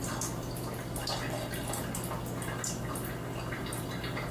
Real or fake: real